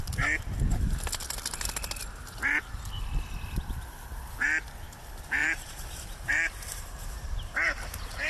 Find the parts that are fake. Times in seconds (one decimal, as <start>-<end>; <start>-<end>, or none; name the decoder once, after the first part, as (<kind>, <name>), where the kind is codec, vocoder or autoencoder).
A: 5.4-8.3 (vocoder, BigVGAN v2)